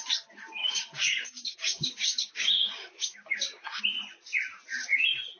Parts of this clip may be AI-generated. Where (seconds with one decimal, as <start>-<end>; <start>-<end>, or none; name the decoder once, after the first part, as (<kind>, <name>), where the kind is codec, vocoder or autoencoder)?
0.6-3.8 (codec, DAC)